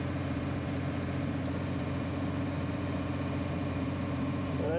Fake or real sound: fake